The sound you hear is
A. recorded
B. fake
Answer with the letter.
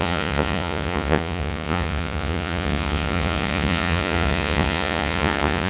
B